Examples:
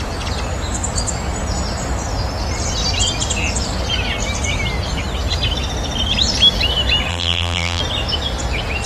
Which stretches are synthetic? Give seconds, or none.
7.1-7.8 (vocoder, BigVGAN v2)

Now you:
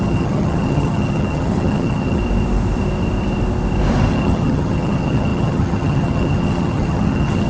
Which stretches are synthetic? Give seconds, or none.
0.0-2.2 (vocoder, HiFi-GAN); 4.1-7.5